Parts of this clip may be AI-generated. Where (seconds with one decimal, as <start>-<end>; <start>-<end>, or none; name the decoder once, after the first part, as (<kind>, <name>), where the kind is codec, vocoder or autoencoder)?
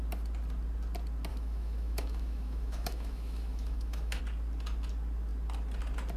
1.3-4.2 (autoencoder, DAC-VAE)